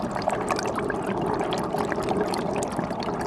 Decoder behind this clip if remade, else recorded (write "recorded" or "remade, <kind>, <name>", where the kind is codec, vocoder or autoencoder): recorded